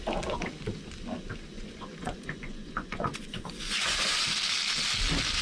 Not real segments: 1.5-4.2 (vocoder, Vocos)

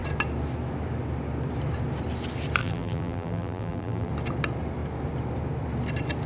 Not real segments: 2.6-4.1 (vocoder, BigVGAN v2)

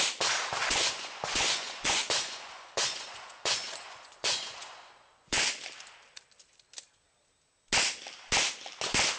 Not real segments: 0.6-5.6 (vocoder, Vocos)

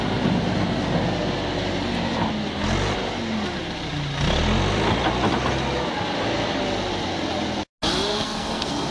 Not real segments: 8.1-8.9 (codec, SNAC)

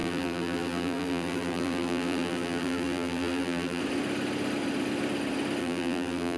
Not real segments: 0.0-3.8 (vocoder, BigVGAN v2); 5.6-6.4

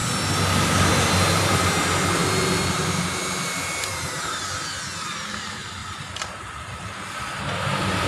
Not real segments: 2.2-4.4 (vocoder, BigVGAN v2); 5.8-7.2

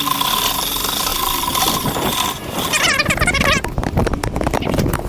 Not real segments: 1.1-3.6 (vocoder, BigVGAN v2)

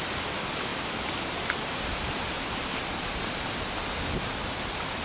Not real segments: 0.7-3.7 (vocoder, BigVGAN v2)